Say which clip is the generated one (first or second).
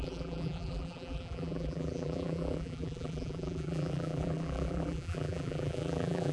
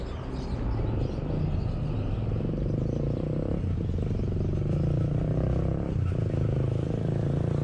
first